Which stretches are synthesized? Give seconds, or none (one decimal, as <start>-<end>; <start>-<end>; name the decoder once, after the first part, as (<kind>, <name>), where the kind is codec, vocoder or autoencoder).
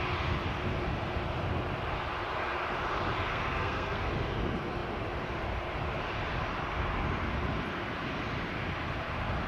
3.3-4.1 (codec, SNAC)